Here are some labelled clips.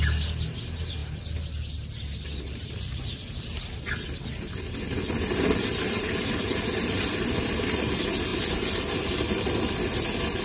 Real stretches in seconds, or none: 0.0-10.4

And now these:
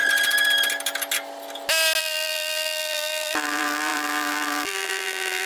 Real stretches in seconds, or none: 0.0-2.0

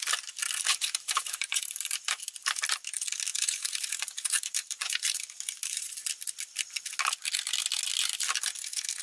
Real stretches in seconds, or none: 0.0-0.7; 2.3-3.3; 5.9-9.0

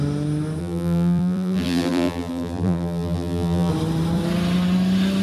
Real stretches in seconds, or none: 0.0-0.6; 3.7-5.2